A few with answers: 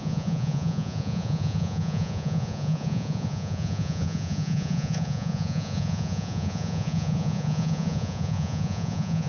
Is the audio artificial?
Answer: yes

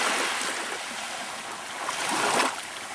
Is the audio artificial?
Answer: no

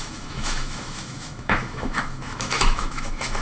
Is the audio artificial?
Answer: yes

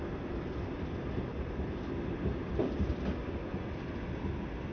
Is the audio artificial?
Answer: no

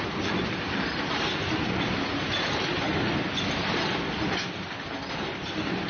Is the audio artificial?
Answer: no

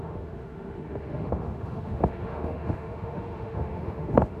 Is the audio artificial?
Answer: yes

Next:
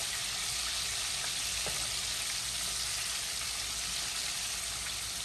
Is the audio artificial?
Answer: no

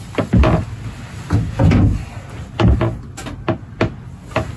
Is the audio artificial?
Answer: no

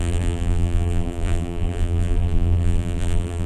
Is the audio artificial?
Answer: yes